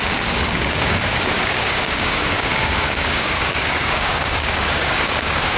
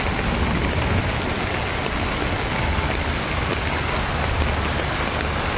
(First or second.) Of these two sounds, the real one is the second